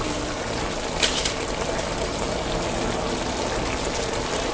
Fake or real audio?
real